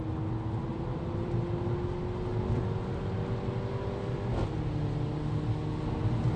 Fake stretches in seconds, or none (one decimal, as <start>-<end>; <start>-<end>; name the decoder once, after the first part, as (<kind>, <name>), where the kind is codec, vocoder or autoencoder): 0.7-1.3 (vocoder, BigVGAN v2)